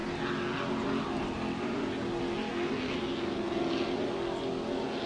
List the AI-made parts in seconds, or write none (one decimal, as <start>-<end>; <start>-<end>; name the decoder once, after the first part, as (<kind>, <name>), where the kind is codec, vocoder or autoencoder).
none